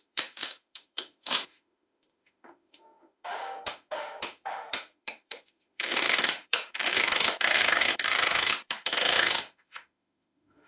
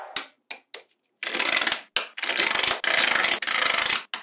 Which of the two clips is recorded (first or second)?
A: second